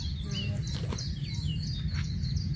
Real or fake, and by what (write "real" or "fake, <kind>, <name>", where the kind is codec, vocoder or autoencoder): real